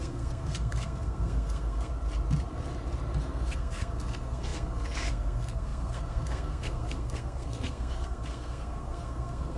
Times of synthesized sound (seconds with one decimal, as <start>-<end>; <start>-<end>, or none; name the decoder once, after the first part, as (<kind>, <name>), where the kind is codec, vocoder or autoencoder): 0.0-1.9 (codec, SNAC); 3.2-9.6